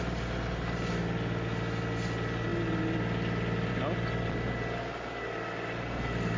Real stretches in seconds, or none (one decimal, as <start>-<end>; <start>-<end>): 0.0-6.4